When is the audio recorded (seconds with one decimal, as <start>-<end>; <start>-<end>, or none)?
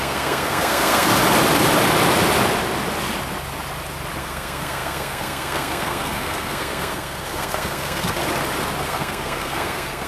1.1-4.2; 8.2-8.8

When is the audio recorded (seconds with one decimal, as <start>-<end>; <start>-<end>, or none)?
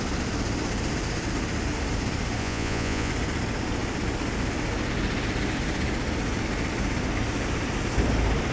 0.0-2.4; 3.1-8.5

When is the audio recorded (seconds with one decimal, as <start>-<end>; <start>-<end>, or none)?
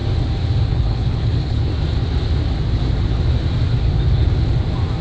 0.0-0.7; 1.7-5.0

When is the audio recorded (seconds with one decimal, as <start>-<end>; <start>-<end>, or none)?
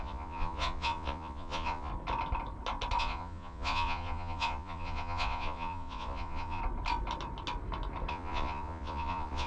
1.9-3.0; 6.6-8.1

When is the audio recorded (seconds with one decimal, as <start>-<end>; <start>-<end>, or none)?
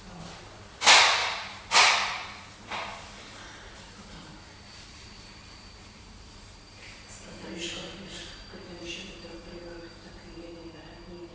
0.0-11.3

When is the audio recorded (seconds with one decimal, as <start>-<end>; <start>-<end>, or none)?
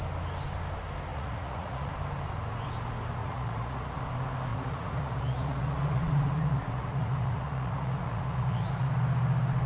0.0-1.1; 1.9-3.2; 3.9-4.5; 8.9-9.7